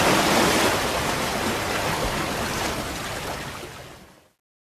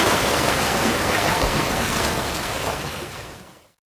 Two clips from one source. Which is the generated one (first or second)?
second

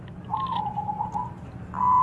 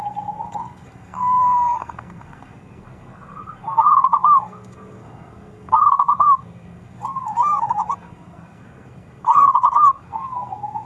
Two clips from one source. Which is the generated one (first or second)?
second